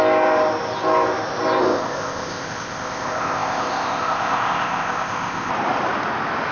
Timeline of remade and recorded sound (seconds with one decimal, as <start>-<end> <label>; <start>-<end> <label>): 0.0-1.6 recorded; 1.6-5.5 remade; 5.5-6.5 recorded